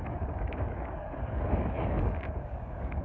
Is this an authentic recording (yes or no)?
no